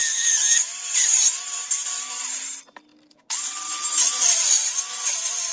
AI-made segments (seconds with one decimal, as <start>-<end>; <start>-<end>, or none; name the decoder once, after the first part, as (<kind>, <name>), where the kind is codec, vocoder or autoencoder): none